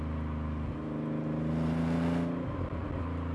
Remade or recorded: recorded